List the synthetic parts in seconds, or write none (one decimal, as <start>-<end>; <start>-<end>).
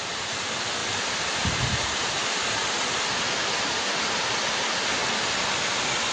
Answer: 0.8-1.4; 2.2-4.4